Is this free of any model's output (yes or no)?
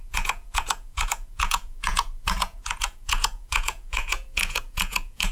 no